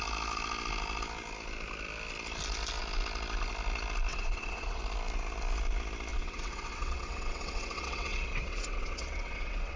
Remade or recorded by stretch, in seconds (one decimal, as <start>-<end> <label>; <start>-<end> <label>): 0.0-4.1 recorded; 4.1-4.8 remade; 4.8-6.1 recorded; 6.1-9.8 remade